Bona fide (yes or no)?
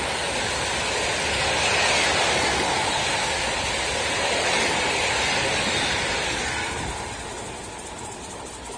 yes